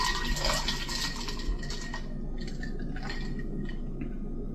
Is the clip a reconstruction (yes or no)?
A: no